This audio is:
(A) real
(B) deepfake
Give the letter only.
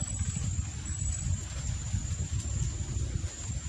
A